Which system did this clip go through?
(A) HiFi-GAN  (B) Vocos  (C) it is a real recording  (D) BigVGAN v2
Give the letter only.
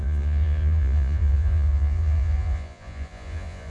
B